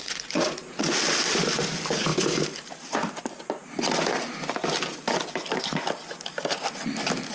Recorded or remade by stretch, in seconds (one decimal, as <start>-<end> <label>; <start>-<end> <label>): 0.0-0.9 remade; 0.9-7.3 recorded